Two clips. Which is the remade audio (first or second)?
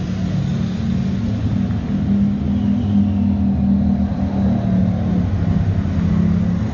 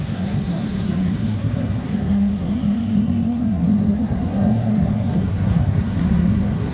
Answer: second